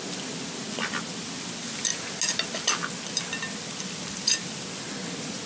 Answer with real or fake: real